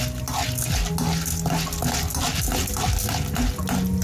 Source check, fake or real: real